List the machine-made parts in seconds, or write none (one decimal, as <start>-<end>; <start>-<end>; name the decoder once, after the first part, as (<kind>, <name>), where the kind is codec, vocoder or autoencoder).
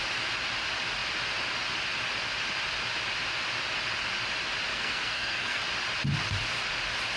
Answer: 4.7-5.6 (codec, SNAC)